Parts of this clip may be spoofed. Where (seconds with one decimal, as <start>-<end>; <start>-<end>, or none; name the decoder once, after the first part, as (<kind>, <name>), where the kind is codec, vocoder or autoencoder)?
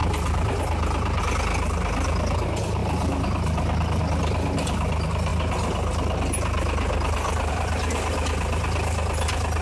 none